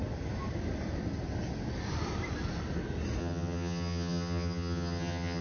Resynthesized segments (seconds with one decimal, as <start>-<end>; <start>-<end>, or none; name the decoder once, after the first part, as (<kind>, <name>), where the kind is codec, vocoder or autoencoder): 3.2-5.4 (vocoder, HiFi-GAN)